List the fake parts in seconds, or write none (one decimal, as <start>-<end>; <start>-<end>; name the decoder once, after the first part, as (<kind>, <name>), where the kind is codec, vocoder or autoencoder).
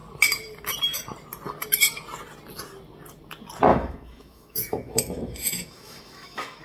3.7-6.6 (autoencoder, DAC-VAE)